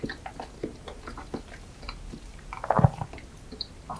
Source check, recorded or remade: recorded